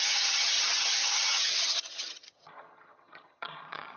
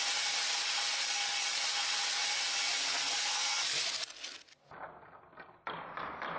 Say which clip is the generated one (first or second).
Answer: first